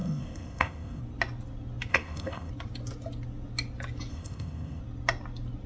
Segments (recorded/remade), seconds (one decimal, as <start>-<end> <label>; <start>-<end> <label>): 0.0-1.0 remade; 1.0-1.9 recorded; 1.9-2.5 remade; 2.5-4.1 recorded; 4.1-4.8 remade; 4.8-5.7 recorded